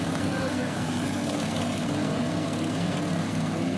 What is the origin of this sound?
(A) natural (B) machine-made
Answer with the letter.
B